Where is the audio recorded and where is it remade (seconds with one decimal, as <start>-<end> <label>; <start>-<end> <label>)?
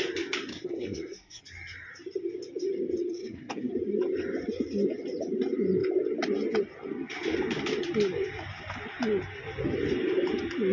0.0-0.5 recorded; 0.5-1.4 remade; 1.4-3.1 recorded; 3.1-3.7 remade; 3.7-10.7 recorded